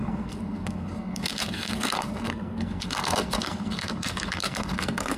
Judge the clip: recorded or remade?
remade